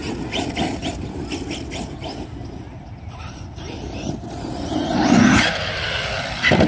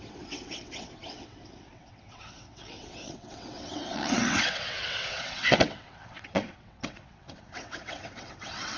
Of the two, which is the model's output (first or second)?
second